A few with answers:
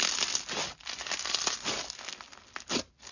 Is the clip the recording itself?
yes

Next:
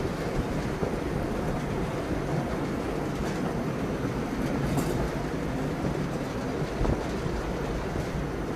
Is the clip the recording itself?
yes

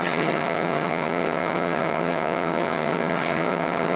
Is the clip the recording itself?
no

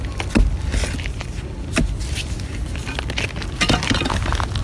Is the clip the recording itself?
yes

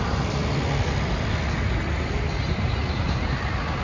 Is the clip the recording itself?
yes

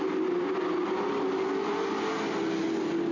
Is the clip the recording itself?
yes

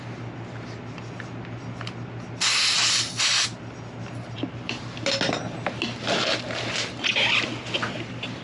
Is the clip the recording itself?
yes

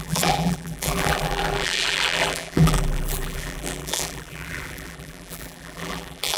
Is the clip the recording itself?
no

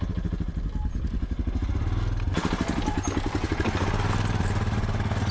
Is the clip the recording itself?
yes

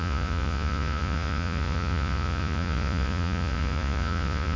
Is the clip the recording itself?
no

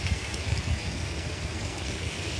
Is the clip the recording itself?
no